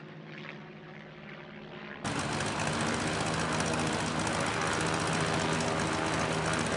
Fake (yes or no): no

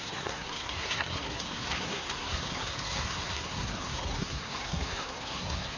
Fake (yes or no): yes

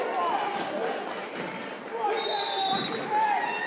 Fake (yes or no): no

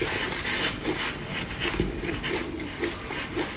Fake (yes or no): no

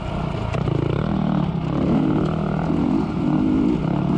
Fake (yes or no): no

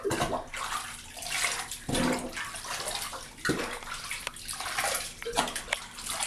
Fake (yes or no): no